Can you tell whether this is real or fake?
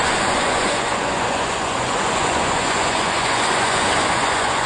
fake